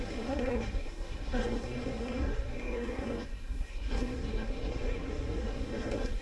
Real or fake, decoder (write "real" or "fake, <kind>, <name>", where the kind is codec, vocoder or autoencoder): fake, codec, SNAC